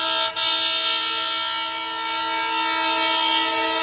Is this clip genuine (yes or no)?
yes